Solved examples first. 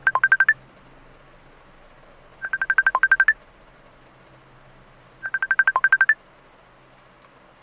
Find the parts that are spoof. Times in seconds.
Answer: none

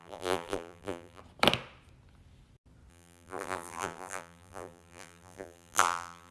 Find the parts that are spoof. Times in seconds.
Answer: 0.0-1.2 (vocoder, BigVGAN v2); 2.9-6.3

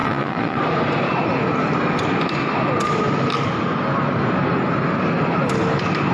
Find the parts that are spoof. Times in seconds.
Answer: 0.0-0.6 (vocoder, Vocos)

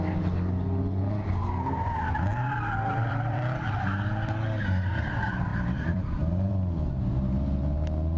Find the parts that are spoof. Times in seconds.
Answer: 3.0-3.7 (vocoder, BigVGAN v2); 5.5-6.5

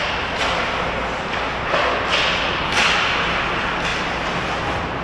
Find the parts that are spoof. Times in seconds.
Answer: none